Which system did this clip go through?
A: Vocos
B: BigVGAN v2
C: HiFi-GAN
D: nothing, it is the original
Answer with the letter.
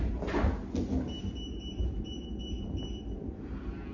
D